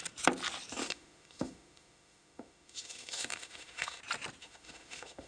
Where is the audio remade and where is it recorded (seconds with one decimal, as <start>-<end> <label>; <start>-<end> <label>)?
0.0-0.8 recorded; 0.8-4.0 remade; 4.0-4.4 recorded; 4.4-5.3 remade